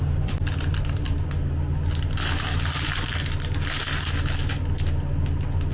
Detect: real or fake real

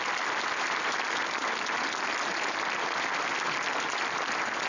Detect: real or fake real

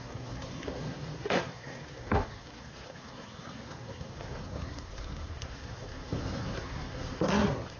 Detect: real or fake fake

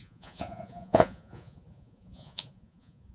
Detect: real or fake fake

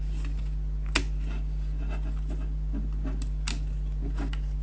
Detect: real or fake real